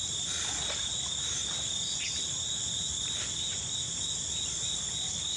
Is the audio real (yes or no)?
yes